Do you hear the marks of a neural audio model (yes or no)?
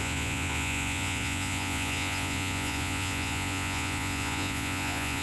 yes